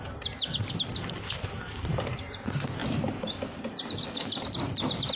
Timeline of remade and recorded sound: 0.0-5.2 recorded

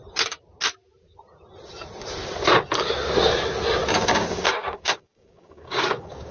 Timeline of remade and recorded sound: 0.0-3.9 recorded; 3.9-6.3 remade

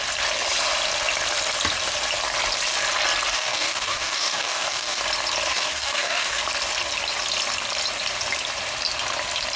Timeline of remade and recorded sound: 0.0-3.3 recorded; 3.3-5.0 remade; 5.0-5.5 recorded; 5.5-6.4 remade; 6.4-9.6 recorded

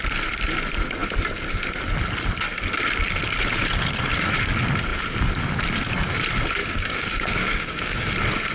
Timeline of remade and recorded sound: 0.0-6.6 recorded; 6.6-8.0 remade; 8.0-8.5 recorded

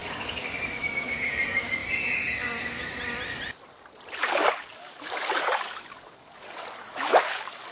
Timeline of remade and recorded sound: 0.0-2.8 remade; 2.8-4.3 recorded; 4.3-7.7 remade

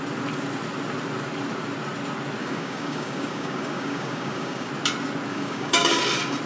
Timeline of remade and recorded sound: 0.0-2.4 recorded; 2.4-4.7 remade; 4.7-5.3 recorded; 5.3-6.0 remade; 6.0-6.5 recorded